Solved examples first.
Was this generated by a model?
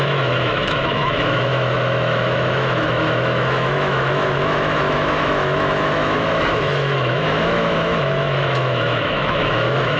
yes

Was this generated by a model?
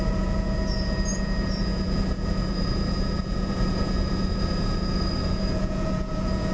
yes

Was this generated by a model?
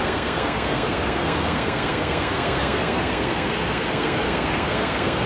yes